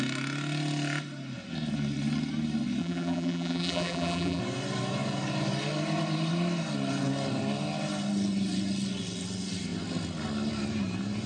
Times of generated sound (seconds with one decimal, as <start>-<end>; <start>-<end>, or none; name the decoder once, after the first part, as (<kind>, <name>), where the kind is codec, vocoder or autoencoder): 2.8-4.4 (vocoder, BigVGAN v2)